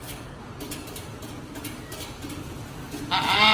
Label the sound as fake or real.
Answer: real